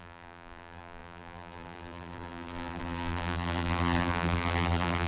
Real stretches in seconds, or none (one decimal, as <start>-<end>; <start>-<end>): none

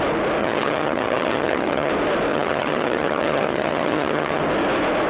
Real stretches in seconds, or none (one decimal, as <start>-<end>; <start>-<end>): 0.0-0.4; 1.9-2.3; 4.4-5.1

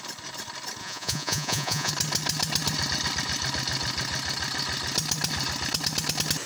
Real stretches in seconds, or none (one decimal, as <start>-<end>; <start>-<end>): 0.0-0.8; 1.9-6.5

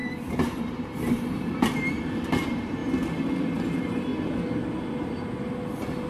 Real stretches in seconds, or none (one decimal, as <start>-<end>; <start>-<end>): 2.8-3.4; 4.1-6.1

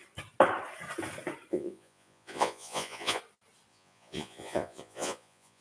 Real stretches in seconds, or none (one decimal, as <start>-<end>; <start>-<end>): 0.0-1.5; 3.2-3.7

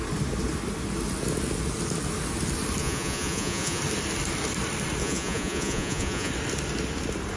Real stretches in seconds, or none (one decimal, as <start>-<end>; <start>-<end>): 0.0-2.8; 3.8-5.0; 6.3-7.4

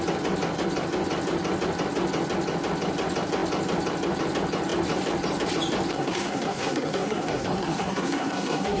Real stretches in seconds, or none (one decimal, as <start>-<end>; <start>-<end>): 0.0-5.9

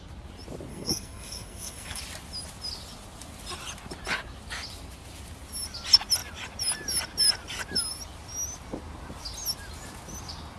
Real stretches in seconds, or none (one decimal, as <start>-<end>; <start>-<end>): 0.0-0.7; 2.0-10.6